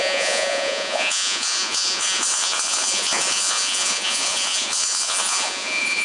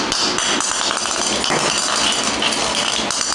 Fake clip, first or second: first